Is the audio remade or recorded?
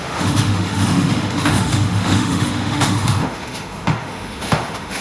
remade